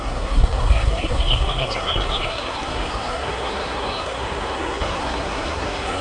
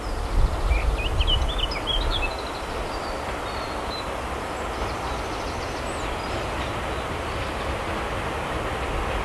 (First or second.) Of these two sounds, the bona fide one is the second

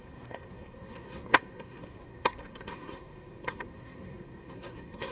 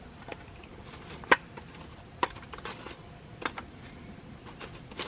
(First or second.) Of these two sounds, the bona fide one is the second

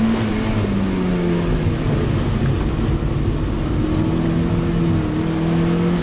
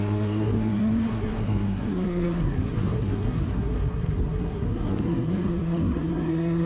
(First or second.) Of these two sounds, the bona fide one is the first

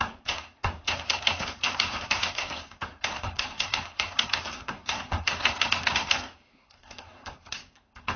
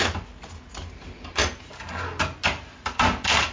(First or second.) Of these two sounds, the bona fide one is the second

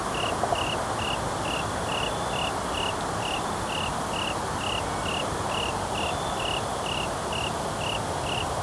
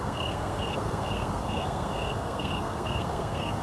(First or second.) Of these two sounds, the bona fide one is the first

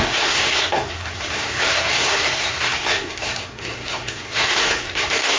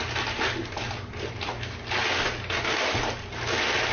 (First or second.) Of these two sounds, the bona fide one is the second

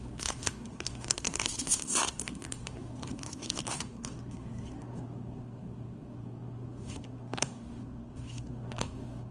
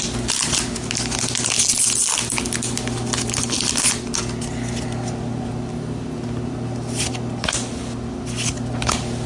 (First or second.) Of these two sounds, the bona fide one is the second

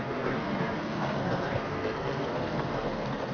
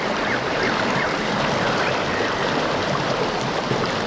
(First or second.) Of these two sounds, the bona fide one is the second